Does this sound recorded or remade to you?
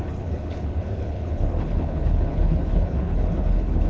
remade